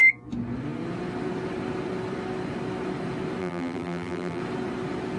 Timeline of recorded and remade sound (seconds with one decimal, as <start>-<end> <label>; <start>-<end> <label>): 0.0-3.4 recorded; 3.4-4.4 remade; 4.4-5.2 recorded